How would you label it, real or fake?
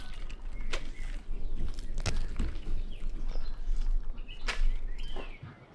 real